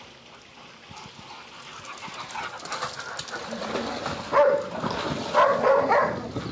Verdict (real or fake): real